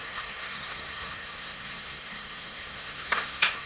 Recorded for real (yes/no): no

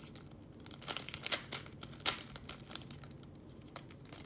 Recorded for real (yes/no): yes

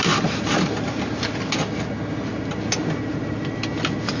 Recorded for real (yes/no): yes